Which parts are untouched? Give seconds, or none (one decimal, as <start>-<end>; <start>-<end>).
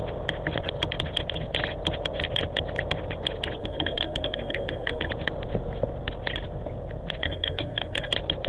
0.0-3.6; 5.1-7.2; 8.1-8.5